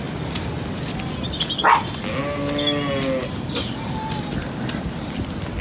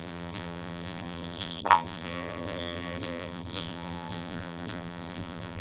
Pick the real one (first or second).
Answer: first